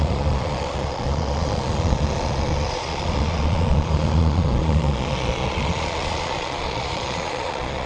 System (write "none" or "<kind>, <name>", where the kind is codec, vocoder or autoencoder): vocoder, Vocos